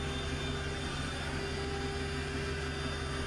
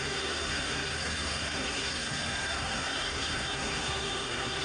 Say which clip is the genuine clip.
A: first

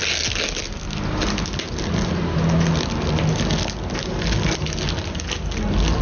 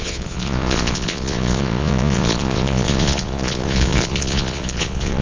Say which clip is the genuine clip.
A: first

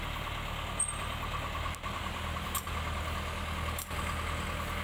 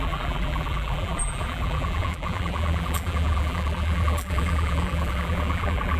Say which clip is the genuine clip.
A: first